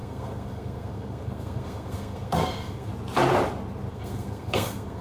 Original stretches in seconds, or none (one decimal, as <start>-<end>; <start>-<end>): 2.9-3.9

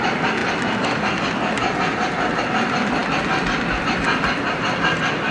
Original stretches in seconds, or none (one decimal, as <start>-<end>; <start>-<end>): 0.0-5.3

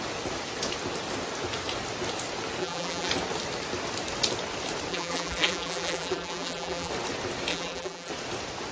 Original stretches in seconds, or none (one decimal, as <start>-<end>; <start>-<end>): 0.0-2.6; 3.1-4.9; 6.9-7.5; 8.1-8.7

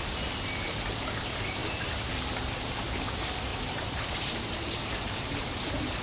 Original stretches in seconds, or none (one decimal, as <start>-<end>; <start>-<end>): 0.0-1.6; 2.3-3.5; 5.6-6.0

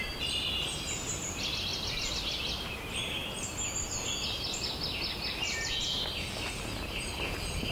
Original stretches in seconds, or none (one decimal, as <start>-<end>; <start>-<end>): 0.0-7.7